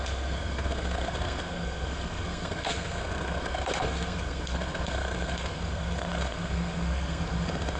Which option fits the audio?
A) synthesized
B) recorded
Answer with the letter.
A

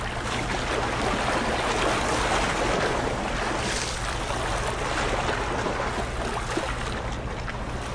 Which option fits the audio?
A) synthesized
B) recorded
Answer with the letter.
B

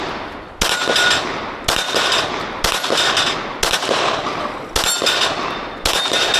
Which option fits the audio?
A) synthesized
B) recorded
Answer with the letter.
B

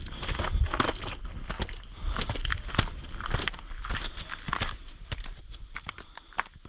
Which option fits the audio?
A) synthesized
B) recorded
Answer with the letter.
B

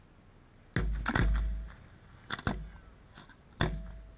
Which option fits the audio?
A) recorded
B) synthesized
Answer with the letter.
A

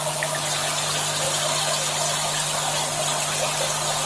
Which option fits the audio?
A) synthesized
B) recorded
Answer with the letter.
B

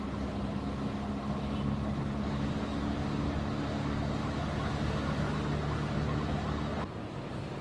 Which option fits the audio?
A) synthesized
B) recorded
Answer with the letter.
B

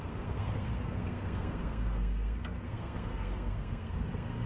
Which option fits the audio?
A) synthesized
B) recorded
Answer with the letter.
A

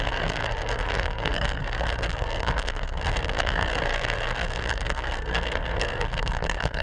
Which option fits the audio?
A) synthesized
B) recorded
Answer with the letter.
A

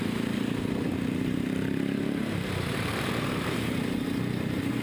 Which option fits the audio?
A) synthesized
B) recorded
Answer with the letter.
A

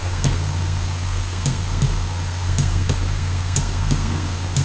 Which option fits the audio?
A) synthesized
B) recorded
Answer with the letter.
A